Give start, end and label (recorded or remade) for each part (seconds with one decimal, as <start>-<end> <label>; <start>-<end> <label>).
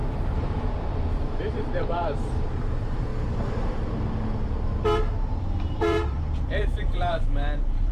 0.0-3.1 remade; 3.1-5.6 recorded; 5.6-7.9 remade